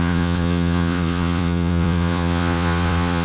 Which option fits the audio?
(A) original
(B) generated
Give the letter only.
B